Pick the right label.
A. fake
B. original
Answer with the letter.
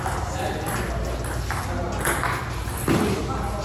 B